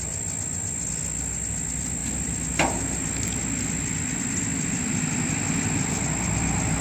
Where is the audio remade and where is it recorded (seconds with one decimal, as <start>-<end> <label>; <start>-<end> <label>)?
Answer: 0.0-6.8 recorded